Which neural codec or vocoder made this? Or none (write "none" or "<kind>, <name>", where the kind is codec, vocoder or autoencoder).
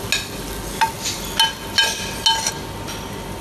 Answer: none